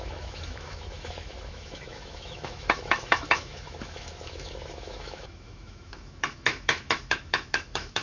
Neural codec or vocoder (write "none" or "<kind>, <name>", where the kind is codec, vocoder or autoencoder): autoencoder, DAC-VAE